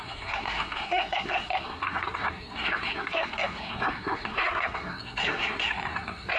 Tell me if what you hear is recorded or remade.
remade